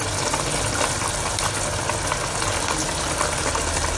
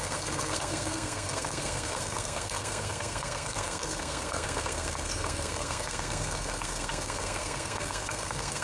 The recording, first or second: first